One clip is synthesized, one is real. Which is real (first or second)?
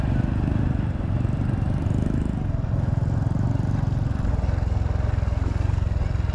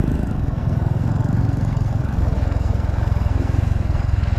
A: first